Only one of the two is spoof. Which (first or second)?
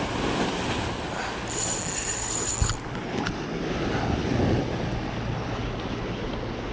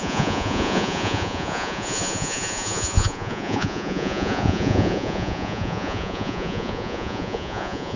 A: second